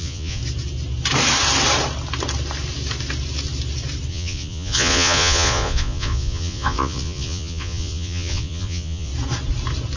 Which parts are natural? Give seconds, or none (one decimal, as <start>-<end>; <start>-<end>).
0.4-4.1; 9.1-10.0